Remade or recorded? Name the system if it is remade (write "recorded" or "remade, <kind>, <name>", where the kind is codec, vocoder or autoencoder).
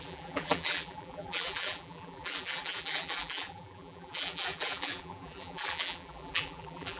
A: remade, vocoder, BigVGAN v2